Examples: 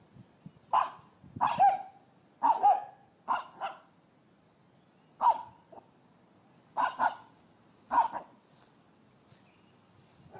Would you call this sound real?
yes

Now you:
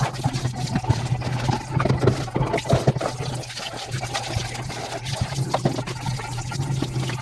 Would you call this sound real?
yes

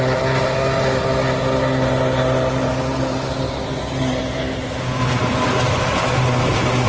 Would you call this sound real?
yes